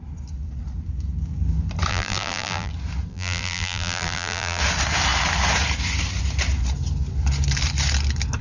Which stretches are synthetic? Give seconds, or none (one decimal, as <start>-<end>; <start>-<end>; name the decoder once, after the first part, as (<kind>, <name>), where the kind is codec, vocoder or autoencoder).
1.9-2.7 (vocoder, BigVGAN v2); 3.1-4.6